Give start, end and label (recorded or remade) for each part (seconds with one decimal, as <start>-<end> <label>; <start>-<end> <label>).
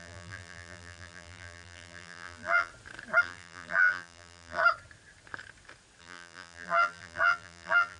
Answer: 0.0-2.7 remade; 2.7-3.2 recorded; 3.2-4.6 remade; 4.6-6.0 recorded; 6.0-8.0 remade